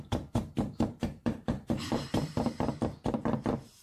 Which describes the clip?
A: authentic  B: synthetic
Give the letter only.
B